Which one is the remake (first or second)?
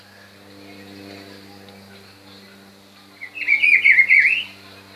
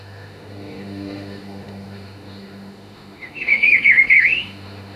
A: second